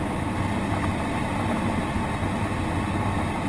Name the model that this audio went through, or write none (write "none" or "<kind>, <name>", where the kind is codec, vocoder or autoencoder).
none